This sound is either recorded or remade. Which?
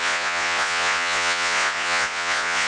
remade